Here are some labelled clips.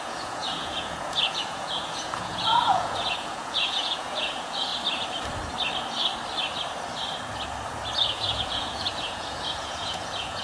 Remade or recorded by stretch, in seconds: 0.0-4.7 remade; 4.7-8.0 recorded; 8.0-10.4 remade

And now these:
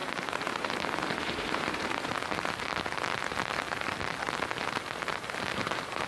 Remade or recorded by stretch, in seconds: 0.0-2.1 remade; 2.1-5.1 recorded; 5.1-6.1 remade

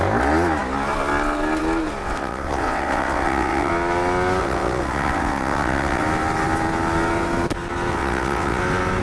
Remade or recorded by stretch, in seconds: 0.0-2.0 recorded; 2.0-3.7 remade; 3.7-4.4 recorded; 4.4-6.0 remade; 6.0-7.9 recorded; 7.9-8.6 remade; 8.6-9.0 recorded